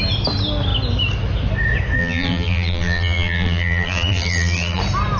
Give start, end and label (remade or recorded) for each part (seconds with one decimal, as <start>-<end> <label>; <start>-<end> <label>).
0.0-2.0 recorded; 2.0-4.8 remade; 4.8-5.2 recorded